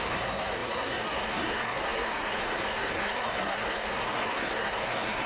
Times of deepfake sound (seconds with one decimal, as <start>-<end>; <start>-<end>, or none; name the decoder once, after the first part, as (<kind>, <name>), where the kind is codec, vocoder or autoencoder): 0.0-5.3 (codec, SNAC)